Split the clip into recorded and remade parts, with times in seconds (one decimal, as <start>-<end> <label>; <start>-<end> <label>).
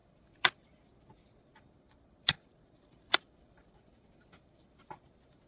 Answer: 0.0-0.6 remade; 0.6-1.5 recorded; 1.5-4.8 remade; 4.8-5.5 recorded